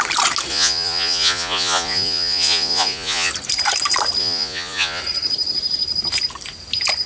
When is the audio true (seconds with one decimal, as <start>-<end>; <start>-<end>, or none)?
0.0-0.5; 3.3-4.2; 5.0-7.1